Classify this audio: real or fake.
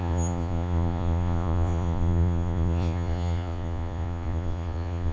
fake